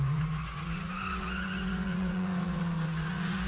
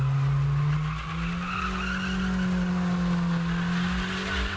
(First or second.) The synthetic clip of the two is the first